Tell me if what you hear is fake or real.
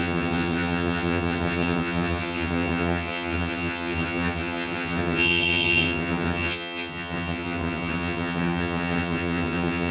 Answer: fake